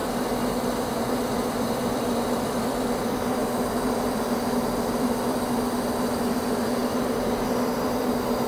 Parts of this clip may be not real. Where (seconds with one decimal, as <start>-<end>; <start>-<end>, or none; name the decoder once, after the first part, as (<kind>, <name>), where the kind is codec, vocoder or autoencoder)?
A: 0.9-8.5 (vocoder, BigVGAN v2)